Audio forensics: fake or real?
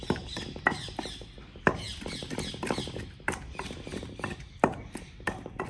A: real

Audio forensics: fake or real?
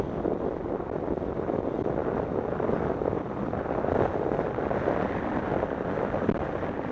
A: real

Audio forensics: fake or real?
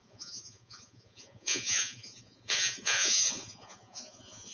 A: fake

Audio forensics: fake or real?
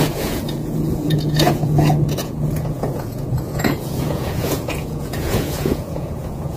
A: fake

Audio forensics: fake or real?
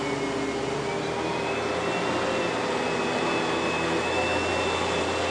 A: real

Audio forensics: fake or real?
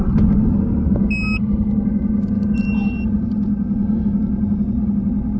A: real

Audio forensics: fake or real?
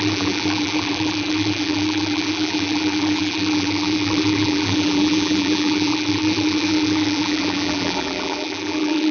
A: fake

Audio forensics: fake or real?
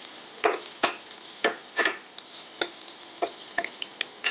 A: real